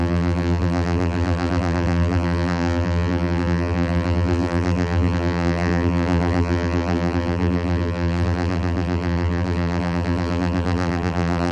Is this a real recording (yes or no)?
no